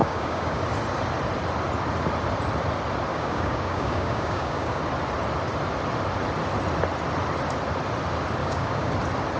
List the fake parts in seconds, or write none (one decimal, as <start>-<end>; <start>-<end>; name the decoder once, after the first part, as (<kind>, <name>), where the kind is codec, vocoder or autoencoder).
0.0-0.6 (codec, DAC); 3.1-4.8; 8.4-8.9